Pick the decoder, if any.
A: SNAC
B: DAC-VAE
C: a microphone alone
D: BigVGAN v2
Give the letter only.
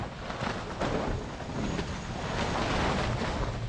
C